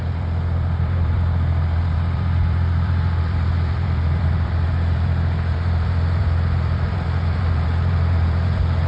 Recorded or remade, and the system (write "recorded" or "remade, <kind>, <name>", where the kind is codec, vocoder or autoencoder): remade, vocoder, BigVGAN v2